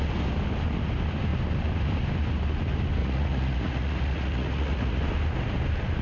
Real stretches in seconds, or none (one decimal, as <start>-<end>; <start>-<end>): 0.0-3.0; 5.0-6.0